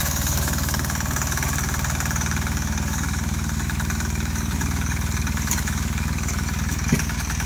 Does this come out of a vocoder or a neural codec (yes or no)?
yes